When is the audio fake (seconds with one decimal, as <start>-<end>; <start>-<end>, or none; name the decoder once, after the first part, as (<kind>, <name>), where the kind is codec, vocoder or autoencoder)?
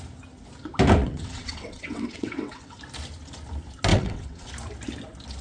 1.0-2.8 (vocoder, WaveNeXt); 3.9-4.5